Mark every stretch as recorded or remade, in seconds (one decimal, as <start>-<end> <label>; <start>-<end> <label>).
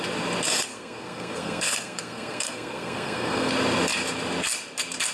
0.0-0.7 recorded; 0.7-3.5 remade; 3.5-5.1 recorded